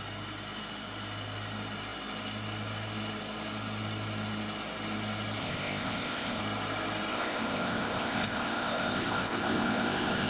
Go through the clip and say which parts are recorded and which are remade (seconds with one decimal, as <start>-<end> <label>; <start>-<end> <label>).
0.0-5.4 recorded; 5.4-6.4 remade; 6.4-7.1 recorded; 7.1-10.3 remade